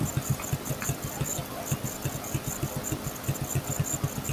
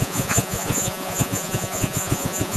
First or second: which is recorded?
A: first